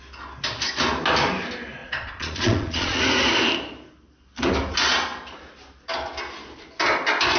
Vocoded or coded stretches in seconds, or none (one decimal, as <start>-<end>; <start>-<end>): 1.8-3.0